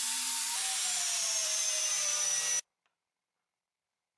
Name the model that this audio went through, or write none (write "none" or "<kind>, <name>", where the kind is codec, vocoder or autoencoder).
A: vocoder, BigVGAN v2